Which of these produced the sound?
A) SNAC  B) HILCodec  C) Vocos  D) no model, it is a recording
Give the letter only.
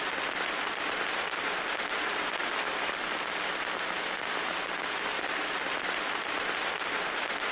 D